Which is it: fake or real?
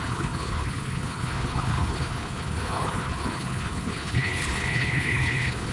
fake